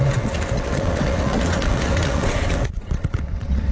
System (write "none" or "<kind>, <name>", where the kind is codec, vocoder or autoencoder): vocoder, WaveNeXt